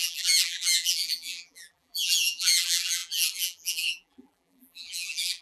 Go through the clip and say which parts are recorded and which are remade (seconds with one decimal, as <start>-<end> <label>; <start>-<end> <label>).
0.0-5.4 remade